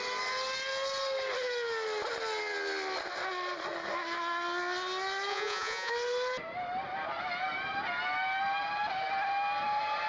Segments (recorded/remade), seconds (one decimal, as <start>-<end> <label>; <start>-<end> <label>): 0.0-5.3 recorded; 5.3-5.9 remade; 5.9-10.1 recorded